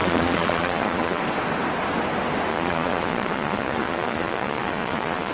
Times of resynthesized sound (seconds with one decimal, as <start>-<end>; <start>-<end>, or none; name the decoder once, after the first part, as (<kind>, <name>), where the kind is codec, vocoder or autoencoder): 0.0-1.2 (vocoder, Vocos); 2.5-5.3